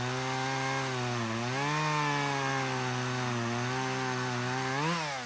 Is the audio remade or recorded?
recorded